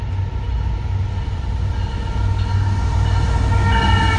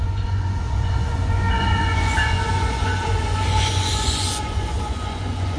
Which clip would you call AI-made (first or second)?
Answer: second